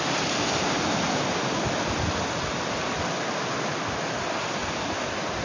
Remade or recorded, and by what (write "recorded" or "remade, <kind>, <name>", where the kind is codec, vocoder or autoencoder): recorded